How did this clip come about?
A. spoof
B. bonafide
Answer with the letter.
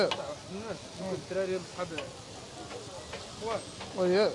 B